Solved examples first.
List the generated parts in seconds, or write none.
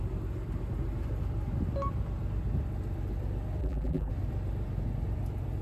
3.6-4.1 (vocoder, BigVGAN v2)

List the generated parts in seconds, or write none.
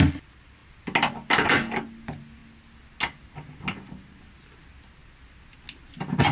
none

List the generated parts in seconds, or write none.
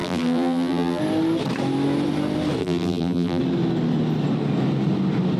0.0-1.0 (vocoder, BigVGAN v2); 2.6-3.4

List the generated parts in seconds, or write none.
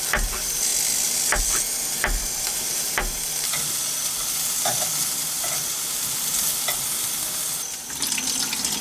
none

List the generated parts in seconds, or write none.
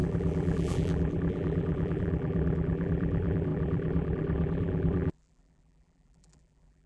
0.0-6.9 (vocoder, BigVGAN v2)